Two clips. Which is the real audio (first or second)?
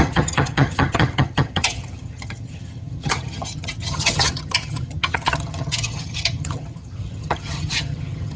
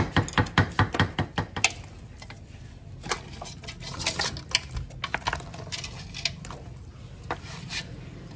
second